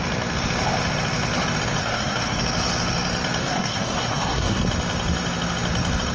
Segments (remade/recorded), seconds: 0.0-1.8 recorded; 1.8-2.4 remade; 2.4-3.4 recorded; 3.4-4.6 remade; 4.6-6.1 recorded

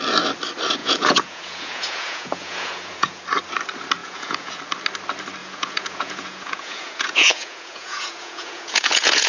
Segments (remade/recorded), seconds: 0.0-0.8 recorded; 0.8-3.2 remade; 3.2-4.0 recorded; 4.0-4.6 remade; 4.6-5.4 recorded; 5.4-9.3 remade

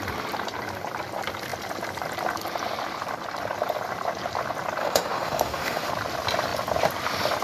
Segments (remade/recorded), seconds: 0.0-4.8 recorded; 4.8-5.9 remade; 5.9-7.4 recorded

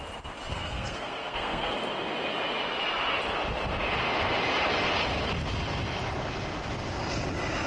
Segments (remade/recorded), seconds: 0.0-0.5 recorded; 0.5-1.7 remade; 1.7-7.7 recorded

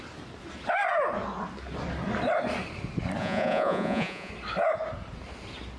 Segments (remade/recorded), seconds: 0.0-3.2 recorded; 3.2-4.3 remade; 4.3-5.8 recorded

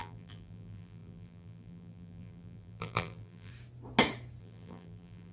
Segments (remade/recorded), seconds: 0.0-3.5 remade; 3.5-4.4 recorded; 4.4-5.3 remade

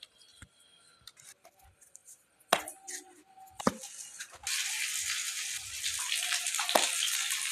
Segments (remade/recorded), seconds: 0.0-7.5 recorded